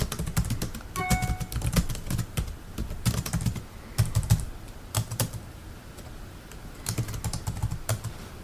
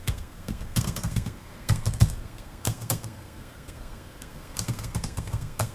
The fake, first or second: second